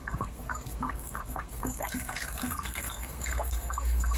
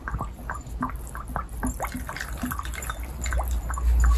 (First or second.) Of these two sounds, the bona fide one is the second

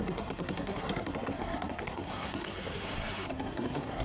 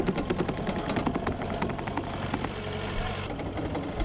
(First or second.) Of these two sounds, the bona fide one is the second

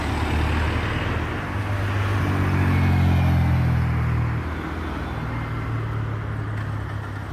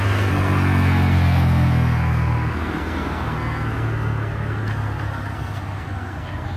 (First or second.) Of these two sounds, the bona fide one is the first